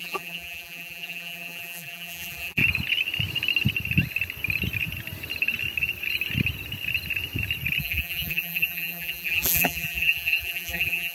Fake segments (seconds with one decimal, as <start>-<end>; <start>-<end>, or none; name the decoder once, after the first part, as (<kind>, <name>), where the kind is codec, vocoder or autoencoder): 0.0-2.6 (vocoder, BigVGAN v2); 7.8-11.1